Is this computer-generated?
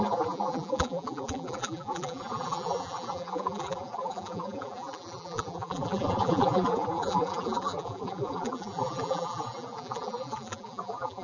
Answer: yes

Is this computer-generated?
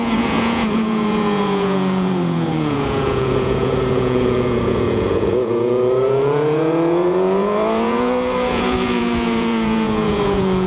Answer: yes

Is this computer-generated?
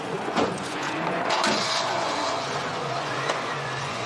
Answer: yes